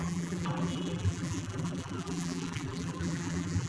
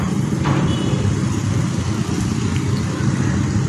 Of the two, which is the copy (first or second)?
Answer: first